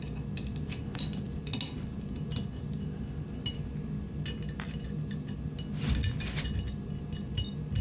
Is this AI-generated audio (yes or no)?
no